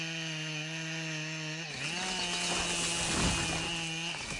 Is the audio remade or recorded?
recorded